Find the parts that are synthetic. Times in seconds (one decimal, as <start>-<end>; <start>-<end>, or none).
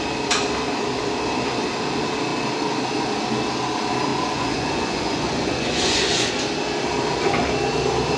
4.1-6.3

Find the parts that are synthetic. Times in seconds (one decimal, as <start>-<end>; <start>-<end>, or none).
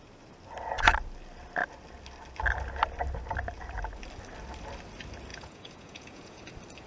5.3-6.4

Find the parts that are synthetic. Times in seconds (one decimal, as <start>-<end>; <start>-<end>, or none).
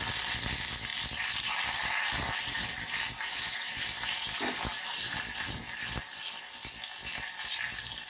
none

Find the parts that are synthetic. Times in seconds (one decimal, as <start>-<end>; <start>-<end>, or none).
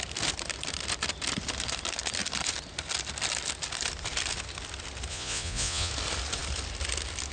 5.1-5.9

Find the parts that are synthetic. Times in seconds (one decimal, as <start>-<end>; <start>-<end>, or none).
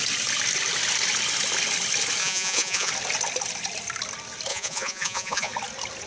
2.2-2.9; 4.5-5.5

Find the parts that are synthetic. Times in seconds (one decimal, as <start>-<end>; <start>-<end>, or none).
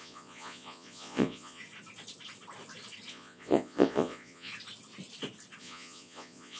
0.0-1.6; 3.1-4.5; 5.6-6.6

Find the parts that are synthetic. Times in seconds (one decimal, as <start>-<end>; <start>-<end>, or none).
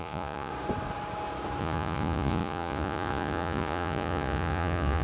0.0-0.5; 1.6-5.0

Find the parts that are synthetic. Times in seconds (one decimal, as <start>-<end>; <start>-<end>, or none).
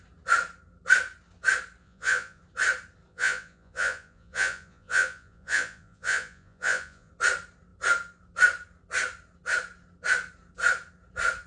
1.8-2.4; 3.1-7.1